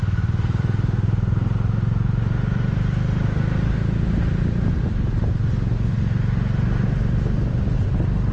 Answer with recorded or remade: recorded